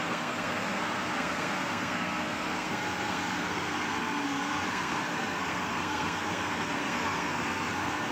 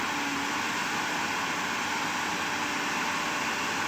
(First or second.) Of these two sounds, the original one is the second